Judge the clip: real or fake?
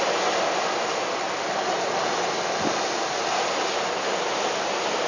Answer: real